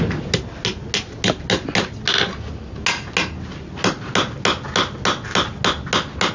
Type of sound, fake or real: real